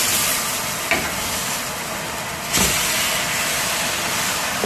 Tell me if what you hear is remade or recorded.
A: recorded